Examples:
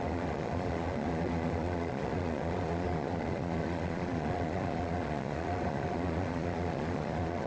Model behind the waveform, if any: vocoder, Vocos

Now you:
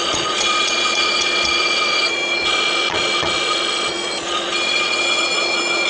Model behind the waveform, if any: vocoder, Vocos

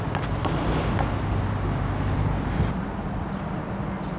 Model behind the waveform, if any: none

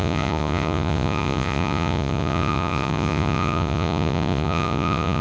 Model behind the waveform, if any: vocoder, Vocos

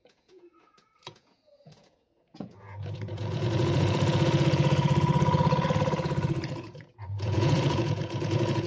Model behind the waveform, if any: vocoder, Vocos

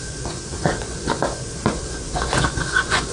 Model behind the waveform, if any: vocoder, Vocos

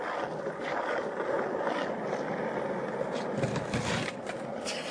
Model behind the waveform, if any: none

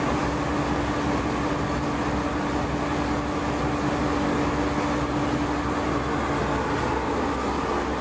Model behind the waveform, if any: none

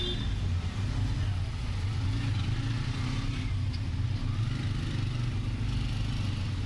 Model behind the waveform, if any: none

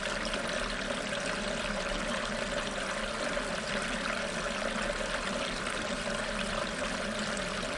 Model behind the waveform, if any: none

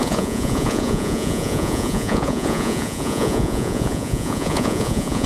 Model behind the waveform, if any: vocoder, Vocos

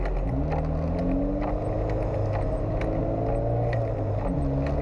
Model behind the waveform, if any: none